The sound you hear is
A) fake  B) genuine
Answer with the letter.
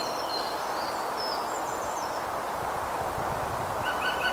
B